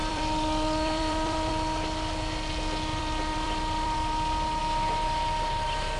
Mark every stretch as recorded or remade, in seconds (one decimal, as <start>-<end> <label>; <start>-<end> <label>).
0.0-1.5 remade; 1.5-2.9 recorded; 2.9-4.6 remade; 4.6-6.0 recorded